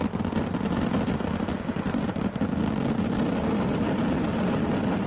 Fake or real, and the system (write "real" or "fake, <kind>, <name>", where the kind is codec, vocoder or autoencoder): real